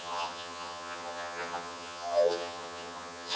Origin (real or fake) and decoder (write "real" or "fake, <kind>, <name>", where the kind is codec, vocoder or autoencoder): fake, vocoder, HiFi-GAN